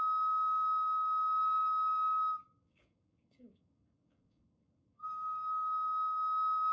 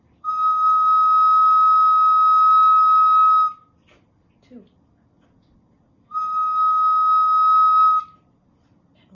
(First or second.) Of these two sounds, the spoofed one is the first